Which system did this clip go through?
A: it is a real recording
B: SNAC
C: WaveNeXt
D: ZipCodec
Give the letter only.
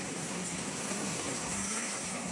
B